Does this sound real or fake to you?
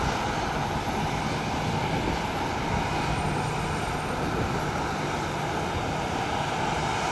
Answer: real